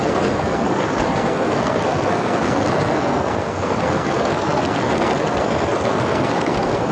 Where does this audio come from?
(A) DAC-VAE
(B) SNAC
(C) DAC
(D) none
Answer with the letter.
B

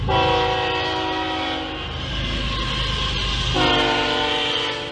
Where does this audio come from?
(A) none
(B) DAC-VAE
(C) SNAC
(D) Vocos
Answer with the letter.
A